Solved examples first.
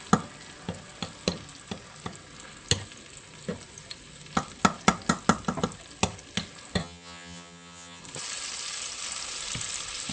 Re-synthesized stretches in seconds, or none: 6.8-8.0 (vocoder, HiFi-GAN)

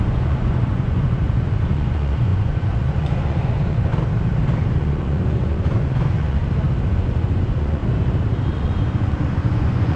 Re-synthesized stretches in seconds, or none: 0.0-3.9 (vocoder, Vocos); 4.6-6.4; 6.9-7.8; 8.4-10.0

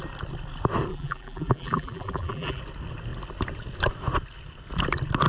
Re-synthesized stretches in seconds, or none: 0.9-2.6 (vocoder, BigVGAN v2)

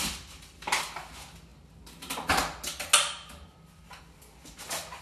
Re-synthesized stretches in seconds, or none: none

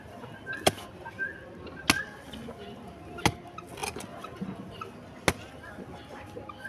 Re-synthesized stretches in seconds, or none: none

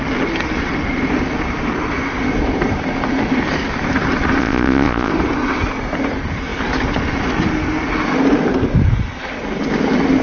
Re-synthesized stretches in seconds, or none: 4.4-5.1 (vocoder, Vocos)